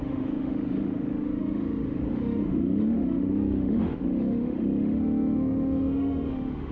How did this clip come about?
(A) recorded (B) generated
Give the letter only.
B